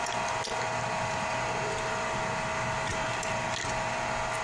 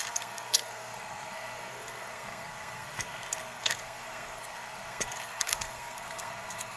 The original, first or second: first